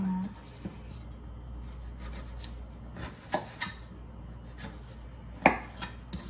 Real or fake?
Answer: real